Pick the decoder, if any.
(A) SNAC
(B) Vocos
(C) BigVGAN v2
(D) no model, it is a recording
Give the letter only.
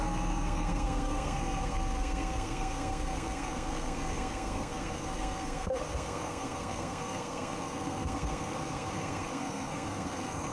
A